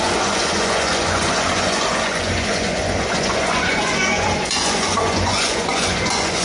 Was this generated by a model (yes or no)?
yes